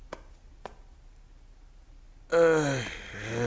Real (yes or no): yes